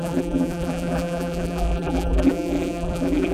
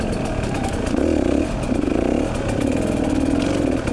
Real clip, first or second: second